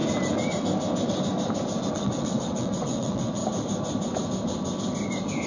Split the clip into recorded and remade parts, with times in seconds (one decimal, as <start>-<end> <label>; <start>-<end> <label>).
0.0-1.9 recorded; 1.9-3.4 remade; 3.4-5.5 recorded